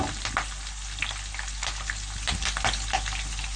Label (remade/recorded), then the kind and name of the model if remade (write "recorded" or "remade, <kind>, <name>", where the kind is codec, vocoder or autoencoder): recorded